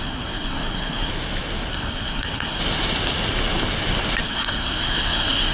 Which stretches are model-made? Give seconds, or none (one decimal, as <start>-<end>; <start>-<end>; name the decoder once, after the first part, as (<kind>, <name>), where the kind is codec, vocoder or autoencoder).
0.0-1.1 (codec, SNAC); 1.7-2.6; 4.2-5.5